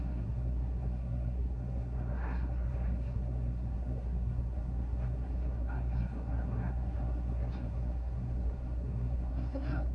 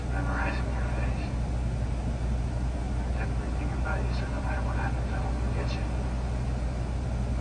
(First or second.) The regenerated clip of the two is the first